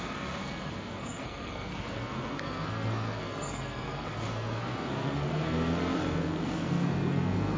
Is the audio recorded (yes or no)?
no